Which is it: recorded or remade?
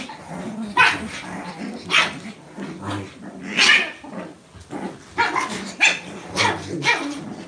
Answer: recorded